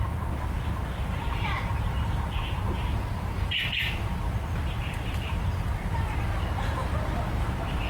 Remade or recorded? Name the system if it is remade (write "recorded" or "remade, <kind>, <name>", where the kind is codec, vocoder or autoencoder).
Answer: remade, vocoder, BigVGAN v2